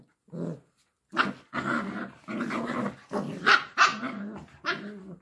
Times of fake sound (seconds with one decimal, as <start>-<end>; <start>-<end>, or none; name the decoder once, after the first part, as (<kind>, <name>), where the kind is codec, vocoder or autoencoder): 3.9-4.6 (vocoder, BigVGAN v2)